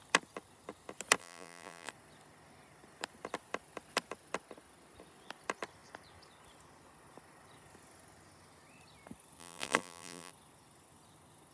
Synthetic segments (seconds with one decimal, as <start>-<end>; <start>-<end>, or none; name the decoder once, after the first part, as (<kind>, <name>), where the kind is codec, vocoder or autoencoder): 1.2-1.9 (vocoder, BigVGAN v2); 9.4-10.3